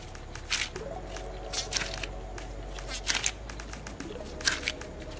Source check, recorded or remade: recorded